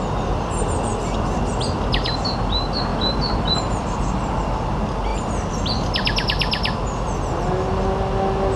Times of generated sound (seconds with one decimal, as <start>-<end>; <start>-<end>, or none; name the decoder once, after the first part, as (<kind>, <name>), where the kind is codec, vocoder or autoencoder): 0.9-1.5 (vocoder, BigVGAN v2); 2.9-4.2